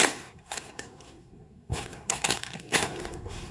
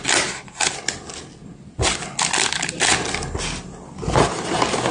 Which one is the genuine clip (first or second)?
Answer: second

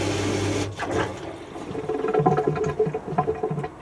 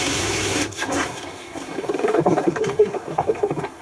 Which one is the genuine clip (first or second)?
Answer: first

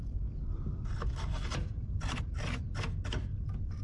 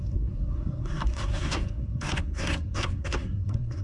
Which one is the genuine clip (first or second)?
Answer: first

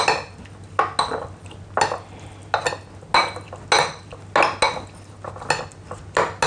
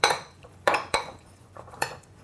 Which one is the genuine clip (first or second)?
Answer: first